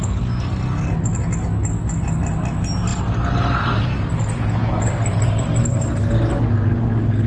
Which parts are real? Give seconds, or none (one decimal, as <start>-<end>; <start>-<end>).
0.0-7.3